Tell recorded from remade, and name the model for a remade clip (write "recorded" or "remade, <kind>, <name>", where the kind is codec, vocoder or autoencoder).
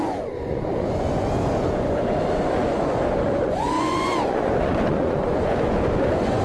remade, vocoder, Vocos